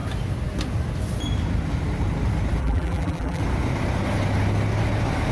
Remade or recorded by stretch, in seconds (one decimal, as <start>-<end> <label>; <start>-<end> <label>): 0.0-2.6 recorded; 2.6-3.4 remade; 3.4-5.3 recorded